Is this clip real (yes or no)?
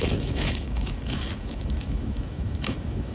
no